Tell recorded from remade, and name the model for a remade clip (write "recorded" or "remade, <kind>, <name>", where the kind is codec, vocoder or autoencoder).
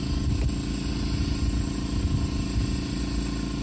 recorded